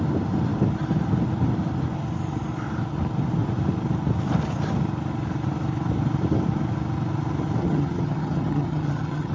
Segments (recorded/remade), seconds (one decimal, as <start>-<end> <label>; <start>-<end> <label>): 0.0-7.6 recorded; 7.6-9.3 remade